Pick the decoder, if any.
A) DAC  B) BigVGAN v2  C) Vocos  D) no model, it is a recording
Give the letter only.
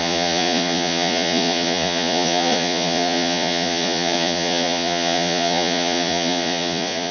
C